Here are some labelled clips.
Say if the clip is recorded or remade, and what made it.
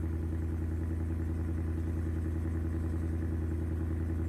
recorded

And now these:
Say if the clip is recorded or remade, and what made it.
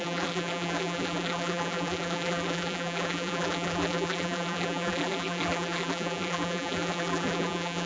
remade, vocoder, BigVGAN v2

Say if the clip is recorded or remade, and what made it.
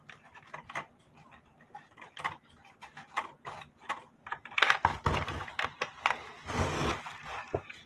recorded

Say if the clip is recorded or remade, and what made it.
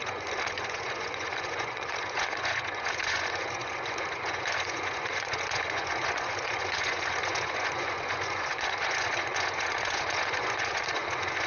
remade, vocoder, Vocos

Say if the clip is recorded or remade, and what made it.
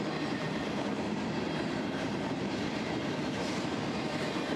remade, vocoder, BigVGAN v2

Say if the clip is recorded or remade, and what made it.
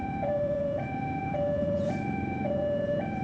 remade, vocoder, Vocos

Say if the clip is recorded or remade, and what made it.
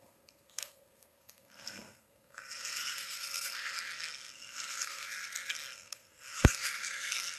remade, codec, SNAC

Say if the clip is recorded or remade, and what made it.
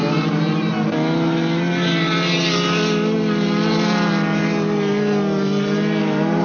recorded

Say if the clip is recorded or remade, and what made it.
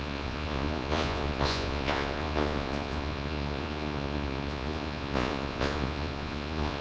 remade, vocoder, Vocos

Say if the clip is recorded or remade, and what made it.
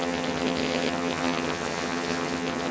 remade, vocoder, HiFi-GAN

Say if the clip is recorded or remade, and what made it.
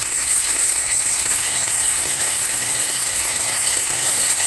remade, codec, SNAC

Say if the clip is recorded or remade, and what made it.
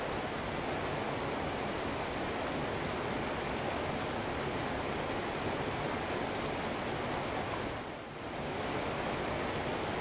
recorded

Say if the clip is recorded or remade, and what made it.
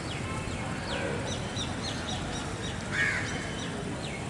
recorded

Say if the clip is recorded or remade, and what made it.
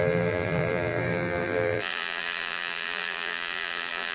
remade, vocoder, BigVGAN v2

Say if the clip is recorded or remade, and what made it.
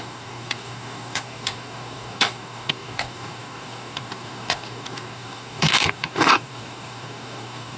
remade, codec, DAC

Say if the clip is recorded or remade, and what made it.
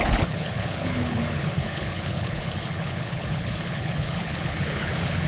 remade, codec, HILCodec